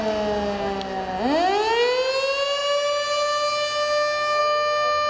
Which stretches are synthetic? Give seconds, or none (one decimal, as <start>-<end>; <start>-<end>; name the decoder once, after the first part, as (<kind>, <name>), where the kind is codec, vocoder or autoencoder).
none